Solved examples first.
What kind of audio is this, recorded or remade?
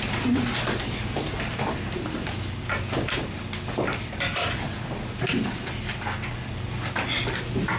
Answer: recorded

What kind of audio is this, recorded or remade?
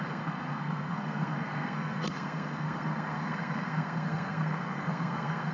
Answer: remade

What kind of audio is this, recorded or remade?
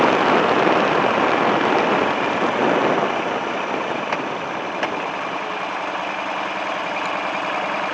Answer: recorded